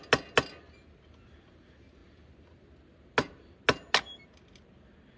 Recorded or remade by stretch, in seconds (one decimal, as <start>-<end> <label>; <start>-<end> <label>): 0.0-5.2 recorded

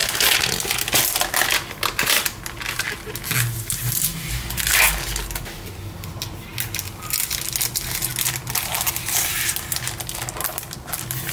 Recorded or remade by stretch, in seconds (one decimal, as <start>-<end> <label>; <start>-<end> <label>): 0.0-11.3 recorded

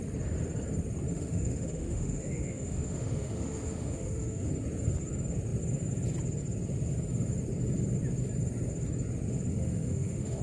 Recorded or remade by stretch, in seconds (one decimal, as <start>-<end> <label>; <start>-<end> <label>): 0.0-1.1 recorded; 1.1-4.5 remade; 4.5-9.5 recorded; 9.5-10.4 remade

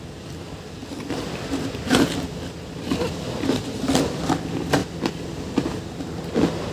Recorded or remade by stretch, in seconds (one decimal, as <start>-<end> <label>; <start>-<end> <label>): 0.0-0.8 recorded; 0.8-4.2 remade; 4.2-4.8 recorded; 4.8-5.7 remade; 5.7-6.7 recorded

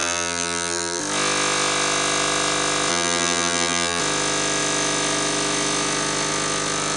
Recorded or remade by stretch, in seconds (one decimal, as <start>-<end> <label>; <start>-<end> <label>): 0.0-1.0 remade; 1.0-2.9 recorded; 2.9-4.0 remade; 4.0-7.0 recorded

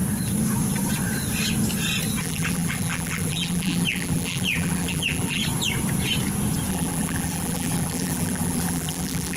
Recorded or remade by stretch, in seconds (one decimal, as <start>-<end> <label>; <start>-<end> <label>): 0.0-2.2 recorded; 2.2-5.4 remade; 5.4-6.7 recorded; 6.7-9.4 remade

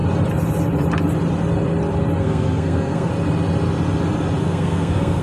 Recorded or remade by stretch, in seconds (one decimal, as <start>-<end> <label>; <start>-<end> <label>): 0.0-2.2 recorded; 2.2-3.1 remade; 3.1-4.4 recorded; 4.4-5.2 remade